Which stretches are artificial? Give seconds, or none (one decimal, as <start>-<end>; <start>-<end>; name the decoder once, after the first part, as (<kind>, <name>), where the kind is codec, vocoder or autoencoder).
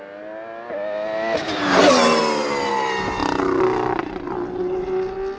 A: none